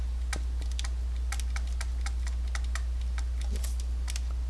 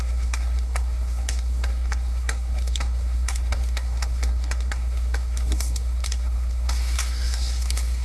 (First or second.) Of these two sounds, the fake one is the second